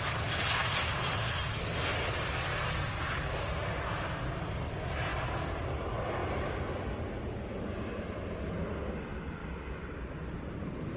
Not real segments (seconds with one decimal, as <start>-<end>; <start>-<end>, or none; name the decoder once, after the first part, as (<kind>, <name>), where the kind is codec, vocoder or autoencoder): none